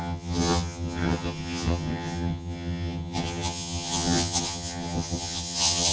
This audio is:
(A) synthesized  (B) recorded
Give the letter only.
A